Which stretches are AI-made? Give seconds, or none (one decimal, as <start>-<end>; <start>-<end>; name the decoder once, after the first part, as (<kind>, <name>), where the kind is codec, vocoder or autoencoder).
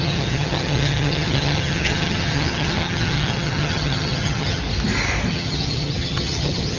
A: 0.0-4.6 (vocoder, HiFi-GAN); 5.3-6.8